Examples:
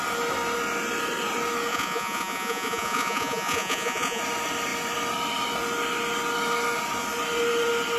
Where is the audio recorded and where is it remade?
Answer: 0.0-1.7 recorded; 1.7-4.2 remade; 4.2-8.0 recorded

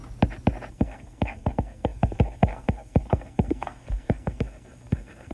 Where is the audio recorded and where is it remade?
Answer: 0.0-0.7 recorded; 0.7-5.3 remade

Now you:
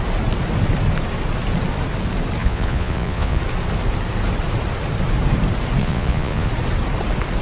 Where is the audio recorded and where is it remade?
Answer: 0.0-2.4 recorded; 2.4-3.4 remade; 3.4-5.8 recorded; 5.8-6.5 remade; 6.5-7.4 recorded

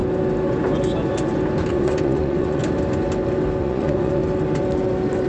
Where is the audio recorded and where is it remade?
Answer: 0.0-1.7 recorded; 1.7-2.6 remade; 2.6-3.6 recorded; 3.6-4.2 remade; 4.2-5.3 recorded